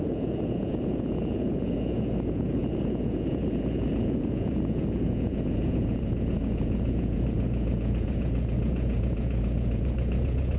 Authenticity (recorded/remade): remade